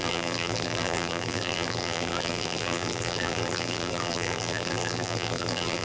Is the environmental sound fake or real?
fake